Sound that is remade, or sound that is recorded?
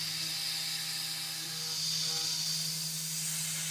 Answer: recorded